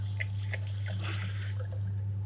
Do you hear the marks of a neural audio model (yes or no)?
no